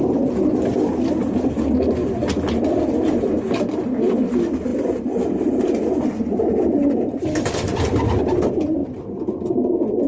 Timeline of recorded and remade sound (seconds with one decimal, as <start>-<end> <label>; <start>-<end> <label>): 0.0-10.1 recorded